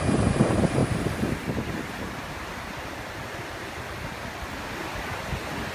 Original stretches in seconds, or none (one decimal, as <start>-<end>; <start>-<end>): 0.0-0.8; 4.2-5.7